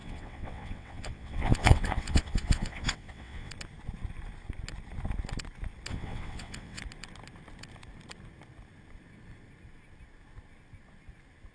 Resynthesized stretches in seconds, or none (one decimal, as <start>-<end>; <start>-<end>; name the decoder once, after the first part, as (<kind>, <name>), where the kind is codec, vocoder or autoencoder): 0.0-3.5 (vocoder, WaveNeXt); 5.9-6.8